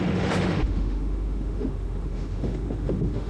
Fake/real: fake